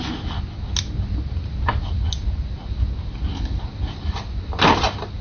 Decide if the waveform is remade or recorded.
recorded